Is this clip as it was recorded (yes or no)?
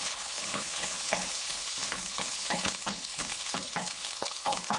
no